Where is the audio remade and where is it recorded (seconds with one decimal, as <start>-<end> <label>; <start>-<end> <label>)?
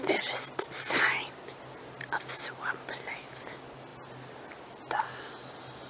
0.0-5.9 recorded